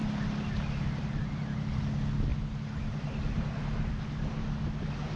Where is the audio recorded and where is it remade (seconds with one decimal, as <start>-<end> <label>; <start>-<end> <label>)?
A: 0.0-5.2 recorded